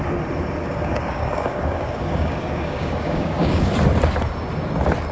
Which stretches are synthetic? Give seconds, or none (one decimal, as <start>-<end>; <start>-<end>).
0.6-3.7

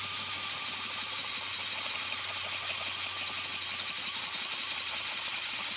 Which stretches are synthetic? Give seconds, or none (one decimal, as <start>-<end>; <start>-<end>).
none

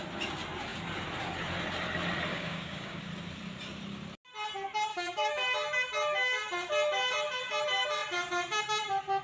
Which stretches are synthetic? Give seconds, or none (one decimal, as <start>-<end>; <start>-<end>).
2.3-3.0; 4.9-5.4